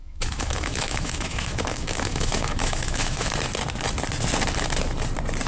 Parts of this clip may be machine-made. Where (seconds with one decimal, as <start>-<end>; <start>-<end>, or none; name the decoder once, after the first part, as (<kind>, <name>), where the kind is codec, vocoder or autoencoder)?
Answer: 0.0-3.3 (autoencoder, DAC-VAE)